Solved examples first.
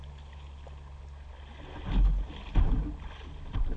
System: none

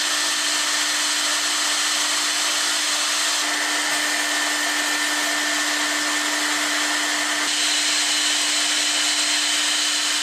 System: none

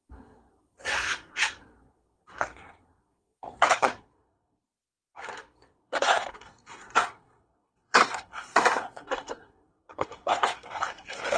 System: codec, SNAC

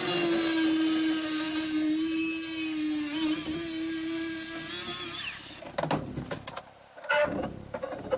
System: none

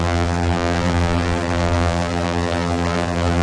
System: vocoder, BigVGAN v2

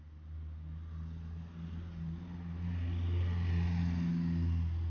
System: none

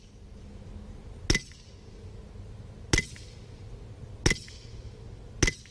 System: none